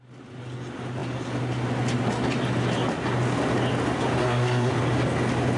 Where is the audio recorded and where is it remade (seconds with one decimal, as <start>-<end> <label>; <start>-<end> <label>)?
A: 0.0-4.2 recorded; 4.2-4.7 remade; 4.7-5.6 recorded

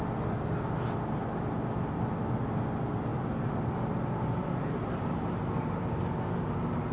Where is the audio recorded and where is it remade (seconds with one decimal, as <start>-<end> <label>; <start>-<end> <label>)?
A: 0.0-3.1 recorded; 3.1-6.0 remade; 6.0-6.9 recorded

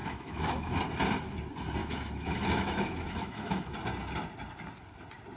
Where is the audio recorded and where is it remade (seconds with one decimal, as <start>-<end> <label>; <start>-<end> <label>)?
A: 0.0-0.7 remade; 0.7-1.8 recorded; 1.8-3.7 remade; 3.7-5.4 recorded

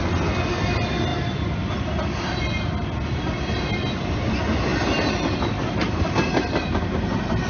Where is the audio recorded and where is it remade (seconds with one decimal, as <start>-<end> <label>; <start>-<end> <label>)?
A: 0.0-7.5 recorded

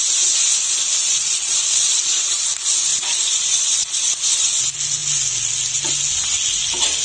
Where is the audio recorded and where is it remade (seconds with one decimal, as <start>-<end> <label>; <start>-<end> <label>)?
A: 0.0-1.1 recorded; 1.1-2.3 remade; 2.3-2.9 recorded; 2.9-4.6 remade; 4.6-7.0 recorded

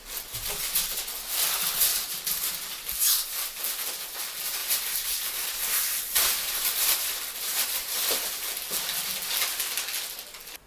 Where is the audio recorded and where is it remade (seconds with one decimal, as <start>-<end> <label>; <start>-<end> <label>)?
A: 0.0-1.9 recorded; 1.9-2.5 remade; 2.5-4.6 recorded; 4.6-8.0 remade; 8.0-10.7 recorded

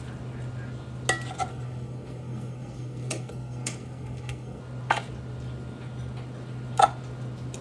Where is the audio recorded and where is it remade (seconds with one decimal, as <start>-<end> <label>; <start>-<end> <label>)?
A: 0.0-1.5 recorded; 1.5-4.6 remade; 4.6-7.6 recorded